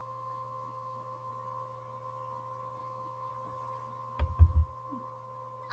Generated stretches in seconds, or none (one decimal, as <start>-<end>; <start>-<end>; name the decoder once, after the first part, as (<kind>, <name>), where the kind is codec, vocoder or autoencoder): 0.0-1.3 (autoencoder, DAC-VAE); 2.8-3.3